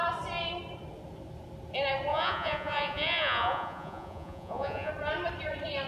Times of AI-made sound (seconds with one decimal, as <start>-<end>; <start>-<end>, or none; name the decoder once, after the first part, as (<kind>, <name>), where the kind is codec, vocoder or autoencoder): 2.1-4.9 (vocoder, Vocos)

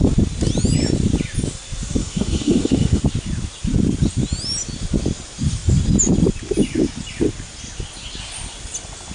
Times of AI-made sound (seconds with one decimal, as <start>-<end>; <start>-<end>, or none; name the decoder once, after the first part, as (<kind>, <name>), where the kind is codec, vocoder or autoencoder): 2.0-3.0 (autoencoder, DAC-VAE)

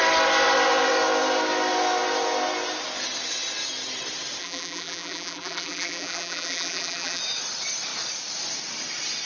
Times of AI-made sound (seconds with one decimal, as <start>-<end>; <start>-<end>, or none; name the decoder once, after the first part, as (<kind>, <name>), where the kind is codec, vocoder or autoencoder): 4.4-7.2 (vocoder, BigVGAN v2)

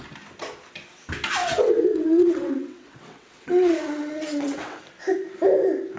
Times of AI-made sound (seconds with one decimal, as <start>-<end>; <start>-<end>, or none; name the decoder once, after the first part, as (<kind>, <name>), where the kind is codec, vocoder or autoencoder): 1.4-4.8 (vocoder, WaveNeXt)

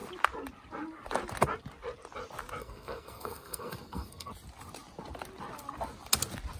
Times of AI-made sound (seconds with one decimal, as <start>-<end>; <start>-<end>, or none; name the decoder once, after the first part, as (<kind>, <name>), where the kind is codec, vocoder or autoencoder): 2.6-4.3 (codec, SNAC)

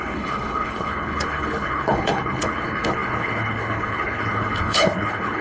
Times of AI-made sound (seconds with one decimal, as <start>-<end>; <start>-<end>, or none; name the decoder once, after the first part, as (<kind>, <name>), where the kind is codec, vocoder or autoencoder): 0.0-5.4 (codec, HILCodec)

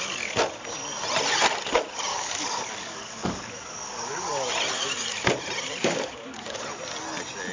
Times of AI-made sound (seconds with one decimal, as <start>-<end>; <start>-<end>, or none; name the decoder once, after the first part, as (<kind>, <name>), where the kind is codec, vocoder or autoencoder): 2.1-4.5 (codec, DAC); 5.8-6.6

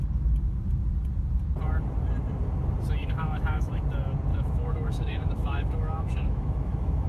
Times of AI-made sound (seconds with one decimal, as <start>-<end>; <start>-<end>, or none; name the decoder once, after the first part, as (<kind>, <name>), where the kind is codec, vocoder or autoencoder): 3.0-3.8 (autoencoder, DAC-VAE); 4.3-7.1